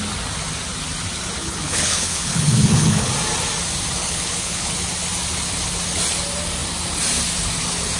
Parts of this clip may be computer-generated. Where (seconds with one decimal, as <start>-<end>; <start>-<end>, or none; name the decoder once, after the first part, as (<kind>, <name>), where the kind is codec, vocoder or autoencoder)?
1.4-3.1 (codec, HILCodec); 4.0-4.7